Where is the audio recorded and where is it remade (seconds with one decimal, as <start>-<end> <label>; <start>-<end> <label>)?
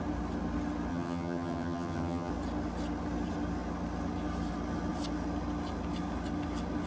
0.0-0.9 recorded; 0.9-2.3 remade; 2.3-6.9 recorded